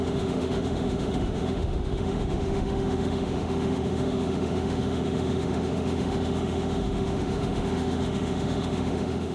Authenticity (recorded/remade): remade